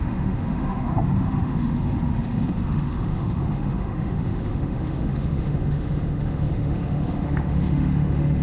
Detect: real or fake fake